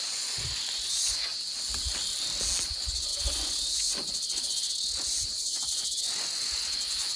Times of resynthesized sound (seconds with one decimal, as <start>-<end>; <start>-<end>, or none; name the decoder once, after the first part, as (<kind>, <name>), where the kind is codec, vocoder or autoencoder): 0.0-1.3 (vocoder, Vocos); 2.7-7.2